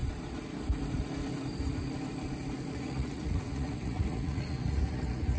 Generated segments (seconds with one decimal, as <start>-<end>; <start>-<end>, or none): 2.7-5.4